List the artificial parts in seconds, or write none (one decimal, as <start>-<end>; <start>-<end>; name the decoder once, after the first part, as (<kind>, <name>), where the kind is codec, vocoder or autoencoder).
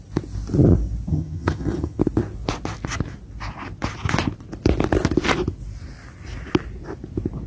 1.1-2.0 (vocoder, HiFi-GAN)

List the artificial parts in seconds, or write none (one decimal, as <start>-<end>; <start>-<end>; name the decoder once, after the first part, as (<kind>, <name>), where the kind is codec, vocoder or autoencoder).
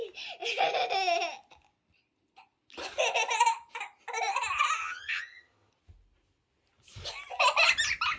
4.8-5.7 (vocoder, HiFi-GAN)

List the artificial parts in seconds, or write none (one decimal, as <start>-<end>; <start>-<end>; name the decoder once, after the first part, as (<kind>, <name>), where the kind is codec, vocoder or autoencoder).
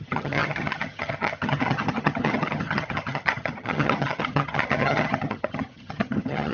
0.0-6.5 (vocoder, HiFi-GAN)